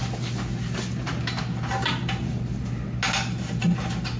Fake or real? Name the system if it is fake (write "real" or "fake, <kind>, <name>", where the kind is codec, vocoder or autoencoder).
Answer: real